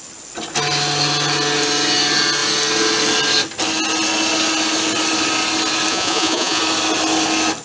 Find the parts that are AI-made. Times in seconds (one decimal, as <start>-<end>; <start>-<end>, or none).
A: 5.9-6.6